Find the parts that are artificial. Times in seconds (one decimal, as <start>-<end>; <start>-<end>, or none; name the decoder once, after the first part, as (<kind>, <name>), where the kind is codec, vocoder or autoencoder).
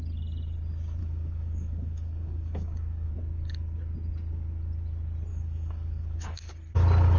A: 1.0-3.1 (codec, DAC); 5.3-6.5